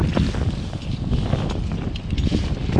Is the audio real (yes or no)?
yes